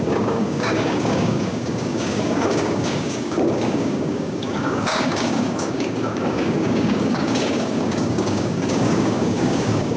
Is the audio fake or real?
fake